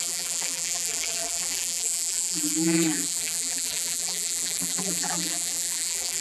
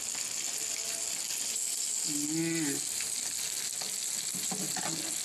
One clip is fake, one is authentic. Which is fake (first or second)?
first